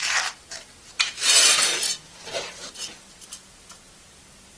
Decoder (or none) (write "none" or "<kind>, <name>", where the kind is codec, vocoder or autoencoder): vocoder, BigVGAN v2